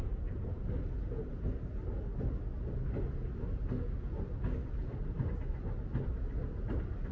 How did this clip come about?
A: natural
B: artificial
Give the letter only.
A